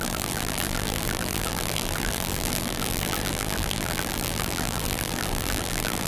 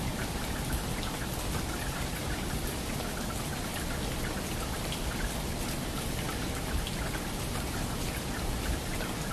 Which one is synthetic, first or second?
first